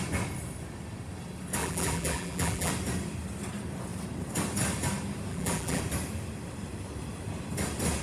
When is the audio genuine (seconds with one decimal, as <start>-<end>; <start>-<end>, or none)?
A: 0.0-1.6; 2.7-5.3; 5.8-8.0